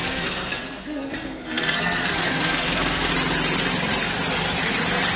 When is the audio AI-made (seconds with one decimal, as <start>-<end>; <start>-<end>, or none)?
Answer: 0.0-3.1

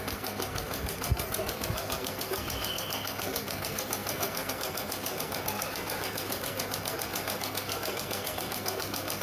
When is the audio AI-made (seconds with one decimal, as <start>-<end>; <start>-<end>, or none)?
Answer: 0.0-9.2